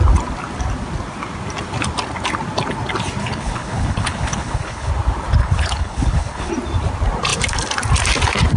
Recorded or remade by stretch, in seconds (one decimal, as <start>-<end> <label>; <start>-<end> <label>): 0.0-3.2 recorded; 3.2-4.9 remade; 4.9-5.4 recorded; 5.4-6.5 remade; 6.5-8.6 recorded